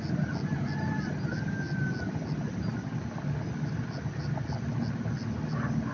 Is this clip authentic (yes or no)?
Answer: yes